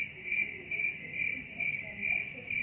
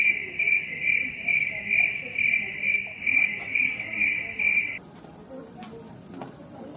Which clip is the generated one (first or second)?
second